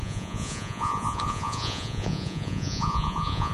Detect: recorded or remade remade